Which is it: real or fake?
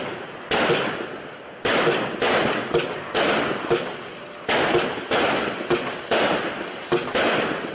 real